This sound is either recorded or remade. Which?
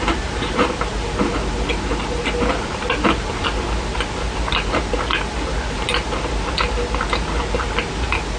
recorded